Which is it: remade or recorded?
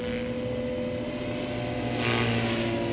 recorded